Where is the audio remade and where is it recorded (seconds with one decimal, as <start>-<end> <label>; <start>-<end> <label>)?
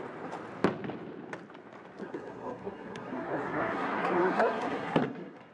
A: 0.0-2.0 recorded; 2.0-5.5 remade